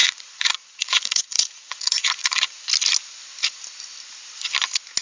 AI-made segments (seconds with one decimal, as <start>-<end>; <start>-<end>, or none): 0.0-2.7